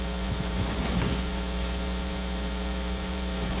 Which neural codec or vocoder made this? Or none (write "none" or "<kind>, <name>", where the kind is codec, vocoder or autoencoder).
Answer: vocoder, Vocos